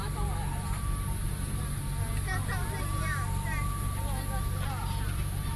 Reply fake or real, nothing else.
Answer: real